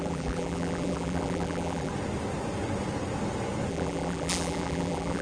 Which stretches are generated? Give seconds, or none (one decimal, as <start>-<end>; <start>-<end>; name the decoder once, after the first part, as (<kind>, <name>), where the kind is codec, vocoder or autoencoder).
0.0-1.9 (vocoder, BigVGAN v2); 3.7-5.2